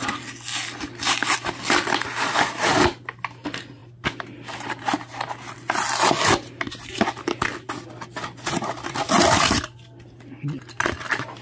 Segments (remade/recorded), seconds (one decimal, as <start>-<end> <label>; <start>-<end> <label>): 0.0-11.4 recorded